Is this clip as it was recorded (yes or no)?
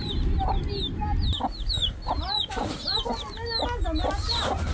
yes